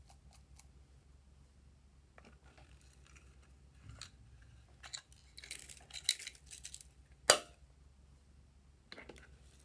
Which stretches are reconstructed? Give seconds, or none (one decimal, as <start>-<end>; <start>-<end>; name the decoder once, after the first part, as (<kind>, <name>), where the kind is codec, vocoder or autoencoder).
none